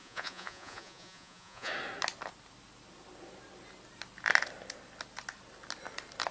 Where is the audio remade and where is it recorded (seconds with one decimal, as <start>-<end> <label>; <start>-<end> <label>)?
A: 0.0-1.7 remade; 1.7-6.3 recorded